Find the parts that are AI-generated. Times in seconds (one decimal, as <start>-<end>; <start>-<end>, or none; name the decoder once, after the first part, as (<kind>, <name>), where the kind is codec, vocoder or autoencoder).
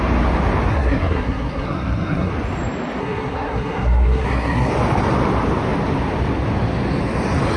0.7-2.3 (codec, SNAC); 3.0-4.7